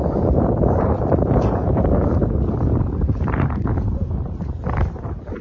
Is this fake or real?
fake